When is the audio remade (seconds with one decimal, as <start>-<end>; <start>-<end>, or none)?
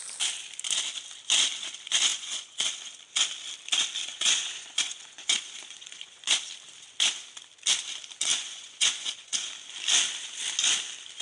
2.1-2.7; 4.1-6.3; 8.3-9.5